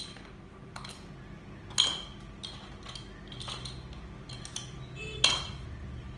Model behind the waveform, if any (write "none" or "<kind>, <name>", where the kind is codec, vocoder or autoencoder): none